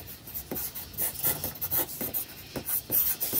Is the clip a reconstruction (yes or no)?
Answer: no